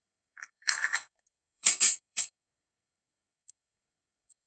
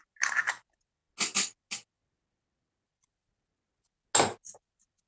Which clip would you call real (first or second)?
second